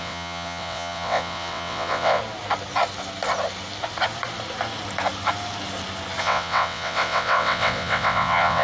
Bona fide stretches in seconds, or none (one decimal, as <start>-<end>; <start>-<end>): 2.2-6.2